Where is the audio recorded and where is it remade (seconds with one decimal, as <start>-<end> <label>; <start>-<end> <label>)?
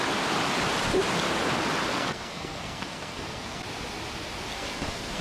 0.0-1.9 recorded; 1.9-3.6 remade; 3.6-4.5 recorded; 4.5-5.2 remade